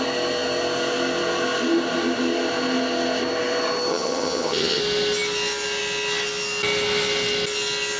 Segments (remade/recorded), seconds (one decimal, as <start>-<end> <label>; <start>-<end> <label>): 0.0-3.9 recorded; 3.9-4.8 remade; 4.8-8.0 recorded